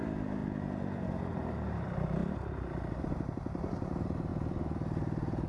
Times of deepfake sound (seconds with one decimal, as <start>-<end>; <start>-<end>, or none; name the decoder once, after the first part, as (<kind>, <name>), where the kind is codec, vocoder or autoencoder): 0.0-0.4 (vocoder, BigVGAN v2); 1.3-2.2; 3.0-4.3